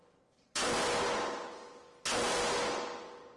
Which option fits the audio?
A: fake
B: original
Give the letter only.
B